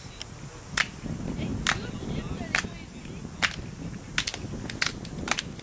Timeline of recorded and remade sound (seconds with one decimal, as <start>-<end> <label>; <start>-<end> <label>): 0.0-5.6 recorded